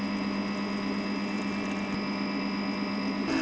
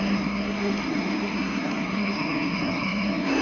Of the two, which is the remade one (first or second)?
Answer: second